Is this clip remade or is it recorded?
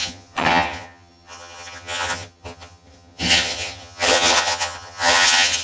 remade